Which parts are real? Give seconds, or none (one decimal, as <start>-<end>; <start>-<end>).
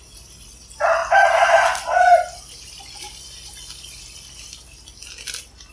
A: 0.0-5.7